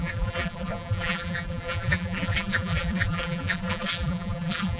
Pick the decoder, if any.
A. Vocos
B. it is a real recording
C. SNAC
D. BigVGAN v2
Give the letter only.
D